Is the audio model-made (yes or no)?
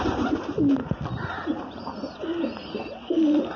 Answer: yes